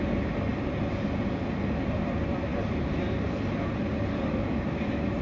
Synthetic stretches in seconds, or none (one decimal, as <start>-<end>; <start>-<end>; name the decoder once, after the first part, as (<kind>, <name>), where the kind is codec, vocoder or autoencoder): none